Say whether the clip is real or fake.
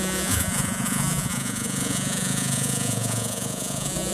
fake